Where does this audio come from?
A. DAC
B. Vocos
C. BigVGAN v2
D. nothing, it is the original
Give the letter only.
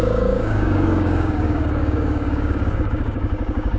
A